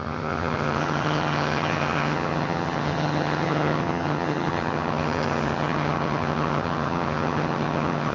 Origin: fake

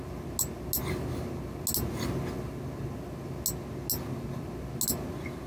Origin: real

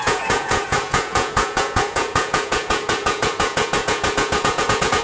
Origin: fake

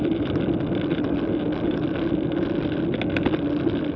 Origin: real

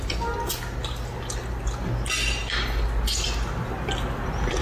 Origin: real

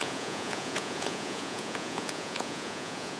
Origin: fake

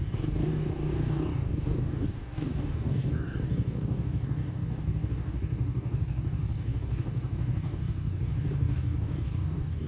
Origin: fake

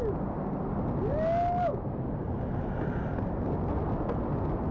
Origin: real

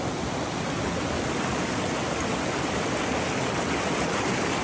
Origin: real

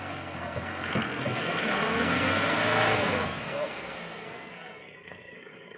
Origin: fake